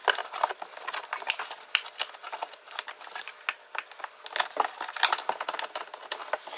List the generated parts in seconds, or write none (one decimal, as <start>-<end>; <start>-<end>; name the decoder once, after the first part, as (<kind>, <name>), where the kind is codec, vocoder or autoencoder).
none

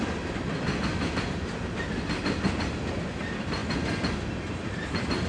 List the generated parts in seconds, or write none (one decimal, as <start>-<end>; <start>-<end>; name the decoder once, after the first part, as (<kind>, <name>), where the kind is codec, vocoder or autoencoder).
none

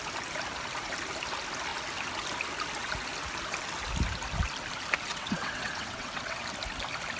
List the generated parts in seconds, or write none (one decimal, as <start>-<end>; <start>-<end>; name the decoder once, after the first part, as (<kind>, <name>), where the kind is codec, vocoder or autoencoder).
5.1-6.4 (vocoder, WaveNeXt)

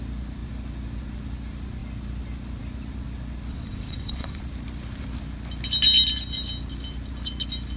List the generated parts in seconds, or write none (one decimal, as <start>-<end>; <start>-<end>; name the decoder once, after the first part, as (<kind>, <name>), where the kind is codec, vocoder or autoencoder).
3.5-4.4 (vocoder, WaveNeXt)

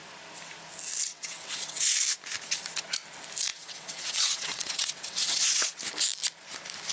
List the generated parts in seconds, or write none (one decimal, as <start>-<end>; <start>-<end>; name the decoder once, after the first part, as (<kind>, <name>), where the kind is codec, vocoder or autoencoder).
1.1-1.9 (vocoder, WaveNeXt); 3.5-5.8

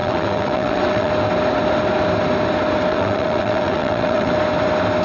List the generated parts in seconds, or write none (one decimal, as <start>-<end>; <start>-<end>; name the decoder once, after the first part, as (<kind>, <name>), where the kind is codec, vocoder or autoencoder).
0.0-1.1 (vocoder, WaveNeXt); 2.9-4.3

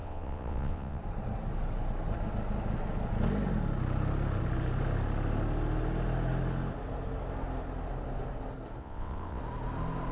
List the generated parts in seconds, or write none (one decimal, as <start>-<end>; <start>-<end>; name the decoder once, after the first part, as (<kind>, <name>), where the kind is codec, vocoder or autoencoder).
0.0-1.0 (vocoder, WaveNeXt); 8.8-9.4